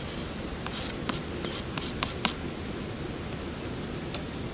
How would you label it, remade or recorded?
recorded